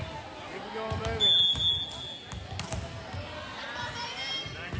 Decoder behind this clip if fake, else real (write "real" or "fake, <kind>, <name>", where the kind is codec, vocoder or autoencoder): real